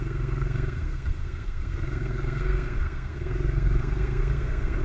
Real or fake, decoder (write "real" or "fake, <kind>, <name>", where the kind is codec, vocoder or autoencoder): fake, codec, SNAC